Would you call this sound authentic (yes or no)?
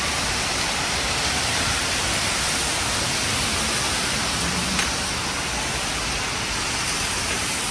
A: yes